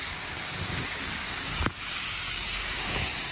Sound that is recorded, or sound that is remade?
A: remade